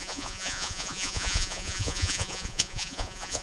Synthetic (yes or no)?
yes